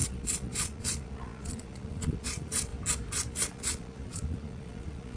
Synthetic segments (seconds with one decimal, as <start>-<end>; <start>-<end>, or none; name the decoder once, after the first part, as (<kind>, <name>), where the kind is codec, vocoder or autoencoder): 0.0-2.7 (vocoder, Vocos); 3.3-5.2